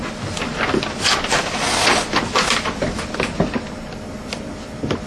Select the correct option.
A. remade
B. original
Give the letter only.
B